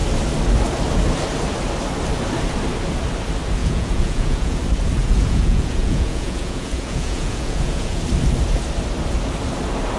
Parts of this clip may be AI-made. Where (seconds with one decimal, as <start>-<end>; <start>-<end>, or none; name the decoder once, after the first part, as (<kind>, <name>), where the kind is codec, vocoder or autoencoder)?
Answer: 3.6-4.6 (vocoder, Vocos); 5.0-8.0